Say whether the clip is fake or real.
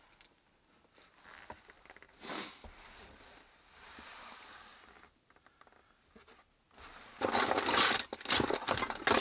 real